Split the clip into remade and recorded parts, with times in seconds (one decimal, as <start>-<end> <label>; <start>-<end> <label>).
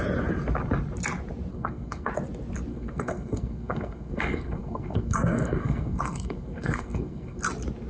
0.0-1.5 recorded; 1.5-2.1 remade; 2.1-2.7 recorded; 2.7-7.4 remade; 7.4-7.9 recorded